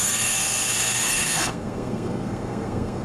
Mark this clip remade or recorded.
remade